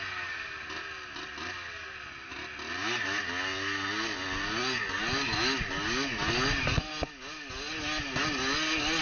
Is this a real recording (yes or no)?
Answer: yes